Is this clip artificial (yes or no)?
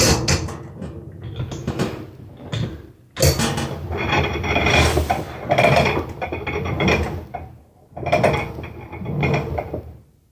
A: no